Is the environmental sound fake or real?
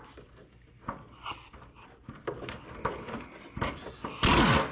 real